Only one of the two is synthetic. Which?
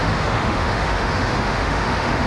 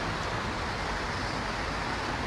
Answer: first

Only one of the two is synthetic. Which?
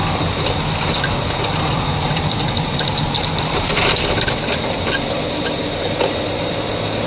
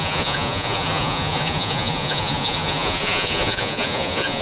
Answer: second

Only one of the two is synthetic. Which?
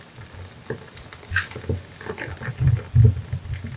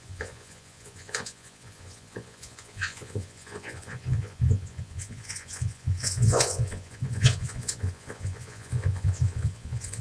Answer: second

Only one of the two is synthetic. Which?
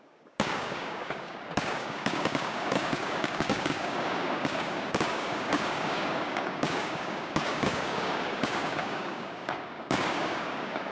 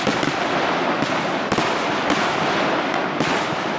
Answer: first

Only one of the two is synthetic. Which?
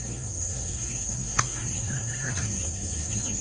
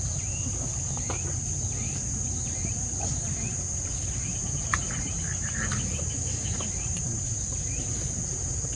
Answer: first